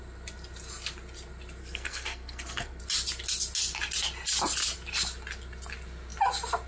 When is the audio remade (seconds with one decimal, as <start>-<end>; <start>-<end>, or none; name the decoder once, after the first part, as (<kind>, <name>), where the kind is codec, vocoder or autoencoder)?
1.6-2.8 (codec, SNAC)